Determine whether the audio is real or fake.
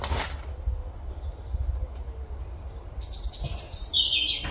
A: real